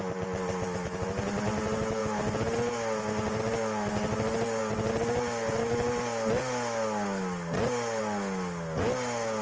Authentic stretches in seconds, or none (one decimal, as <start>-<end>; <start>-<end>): 0.0-9.4